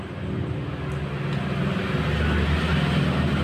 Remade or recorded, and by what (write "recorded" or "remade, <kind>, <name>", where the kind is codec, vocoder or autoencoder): recorded